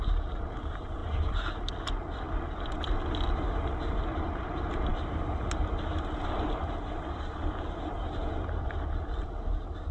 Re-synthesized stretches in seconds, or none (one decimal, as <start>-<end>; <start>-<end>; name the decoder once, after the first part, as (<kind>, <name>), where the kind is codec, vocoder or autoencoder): none